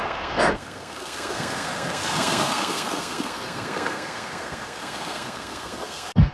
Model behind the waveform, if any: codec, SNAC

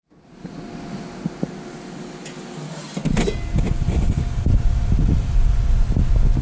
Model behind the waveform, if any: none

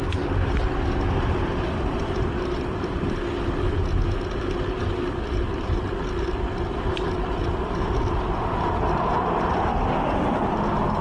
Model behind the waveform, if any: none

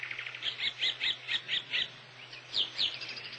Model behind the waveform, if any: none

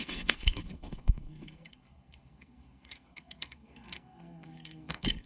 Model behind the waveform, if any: codec, SNAC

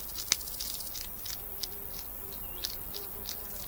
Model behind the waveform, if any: none